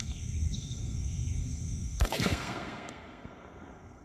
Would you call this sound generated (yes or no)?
yes